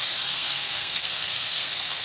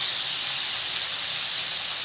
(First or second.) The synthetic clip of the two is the first